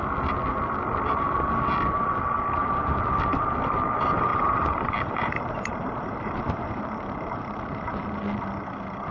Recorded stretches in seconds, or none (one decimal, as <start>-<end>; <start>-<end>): 0.0-2.6; 3.1-4.3; 8.1-9.1